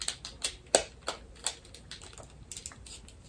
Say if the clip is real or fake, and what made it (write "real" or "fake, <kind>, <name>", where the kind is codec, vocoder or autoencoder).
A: real